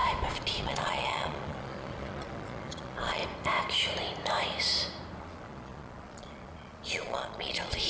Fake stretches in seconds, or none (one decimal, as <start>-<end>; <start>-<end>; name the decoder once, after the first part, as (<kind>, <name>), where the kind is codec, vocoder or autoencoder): 0.6-3.2 (vocoder, Vocos); 5.2-7.9